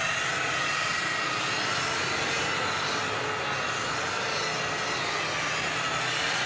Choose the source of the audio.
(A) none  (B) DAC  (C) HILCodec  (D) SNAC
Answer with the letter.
A